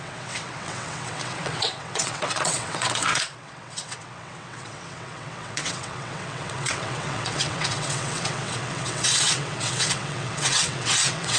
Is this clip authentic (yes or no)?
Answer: no